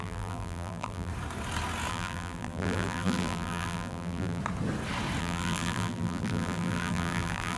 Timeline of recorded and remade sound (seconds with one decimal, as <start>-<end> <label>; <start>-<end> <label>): 0.0-1.1 remade; 1.1-1.9 recorded; 1.9-4.4 remade; 4.4-5.2 recorded; 5.2-7.6 remade